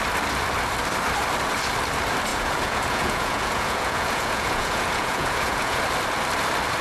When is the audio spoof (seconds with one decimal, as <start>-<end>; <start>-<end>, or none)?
2.3-5.8